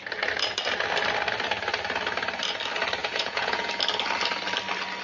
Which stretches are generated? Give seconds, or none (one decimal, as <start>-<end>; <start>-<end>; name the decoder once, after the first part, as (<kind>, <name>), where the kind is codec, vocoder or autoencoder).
3.0-3.7 (vocoder, Vocos)